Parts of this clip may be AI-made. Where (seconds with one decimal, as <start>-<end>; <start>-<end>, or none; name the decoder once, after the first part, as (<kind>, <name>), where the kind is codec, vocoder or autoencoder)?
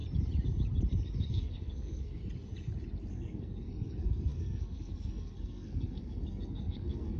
1.3-2.2 (codec, SNAC); 3.1-7.2